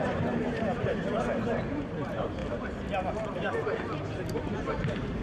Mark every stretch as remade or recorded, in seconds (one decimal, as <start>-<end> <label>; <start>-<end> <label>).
0.0-2.4 remade; 2.4-3.3 recorded; 3.3-5.2 remade